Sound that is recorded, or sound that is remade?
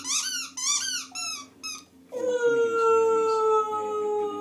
recorded